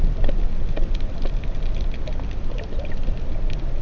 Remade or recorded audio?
recorded